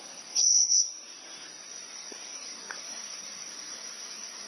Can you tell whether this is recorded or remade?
remade